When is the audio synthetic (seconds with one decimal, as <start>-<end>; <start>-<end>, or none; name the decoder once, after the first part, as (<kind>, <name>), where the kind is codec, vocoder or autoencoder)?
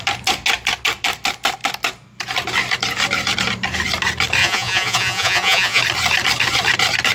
4.4-5.8 (vocoder, Vocos)